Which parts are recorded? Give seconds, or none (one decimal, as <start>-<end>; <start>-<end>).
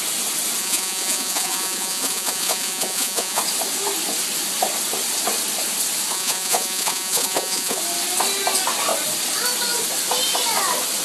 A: 0.0-0.6; 3.4-6.1; 7.8-11.0